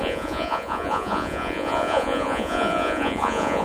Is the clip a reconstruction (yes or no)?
yes